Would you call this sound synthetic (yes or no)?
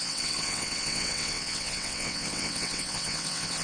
yes